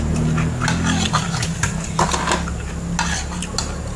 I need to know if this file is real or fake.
real